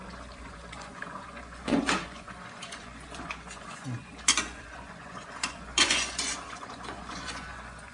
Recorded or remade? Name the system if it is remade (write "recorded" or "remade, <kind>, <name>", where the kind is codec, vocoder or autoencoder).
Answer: remade, vocoder, Vocos